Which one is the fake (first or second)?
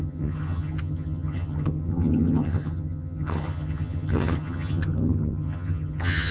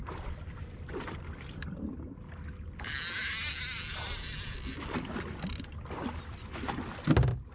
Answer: first